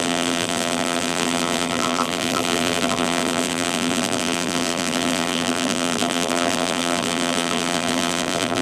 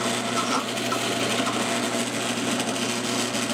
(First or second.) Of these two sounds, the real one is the second